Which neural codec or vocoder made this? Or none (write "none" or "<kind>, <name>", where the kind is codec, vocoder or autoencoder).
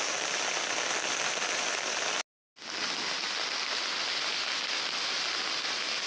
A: none